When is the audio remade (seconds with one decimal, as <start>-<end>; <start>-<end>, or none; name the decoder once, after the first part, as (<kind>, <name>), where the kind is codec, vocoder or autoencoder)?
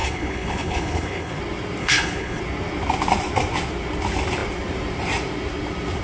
0.0-1.4 (codec, HILCodec); 1.8-2.4